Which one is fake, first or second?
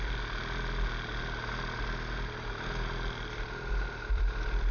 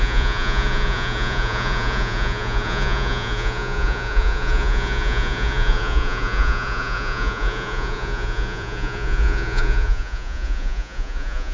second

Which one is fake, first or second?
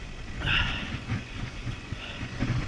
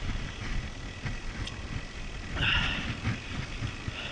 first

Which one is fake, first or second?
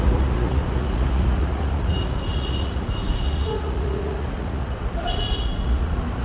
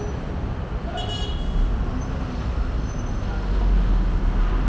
first